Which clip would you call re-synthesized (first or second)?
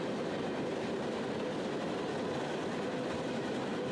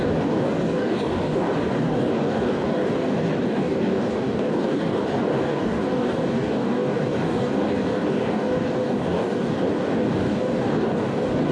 second